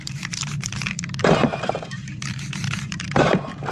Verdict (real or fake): fake